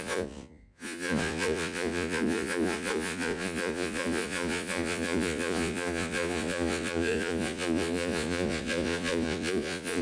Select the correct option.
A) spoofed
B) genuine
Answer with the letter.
A